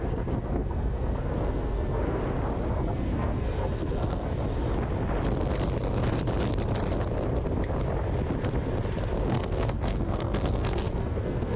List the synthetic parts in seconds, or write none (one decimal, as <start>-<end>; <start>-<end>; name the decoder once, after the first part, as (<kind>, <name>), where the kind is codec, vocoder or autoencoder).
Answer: 0.0-2.2 (codec, SNAC); 2.7-4.3; 9.2-11.6